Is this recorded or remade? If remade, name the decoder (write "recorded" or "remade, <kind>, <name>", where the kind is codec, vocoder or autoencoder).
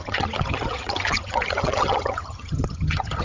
remade, vocoder, HiFi-GAN